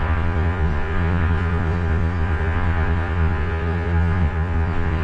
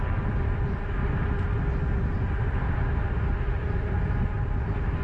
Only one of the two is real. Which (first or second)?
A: second